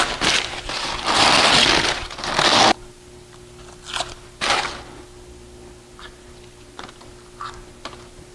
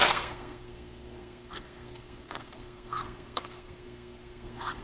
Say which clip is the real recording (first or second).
first